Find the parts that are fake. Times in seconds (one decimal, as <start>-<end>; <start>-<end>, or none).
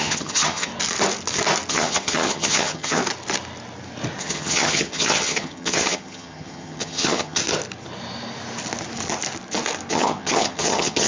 0.0-0.7; 1.7-3.0; 4.2-7.4; 9.9-11.1